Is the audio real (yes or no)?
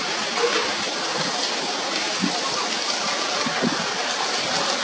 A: yes